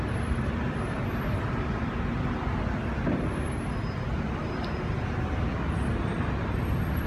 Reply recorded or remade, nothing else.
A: recorded